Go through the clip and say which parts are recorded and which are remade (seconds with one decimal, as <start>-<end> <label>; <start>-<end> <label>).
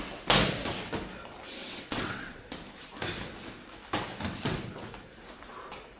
0.0-1.6 recorded; 1.6-2.4 remade; 2.4-6.0 recorded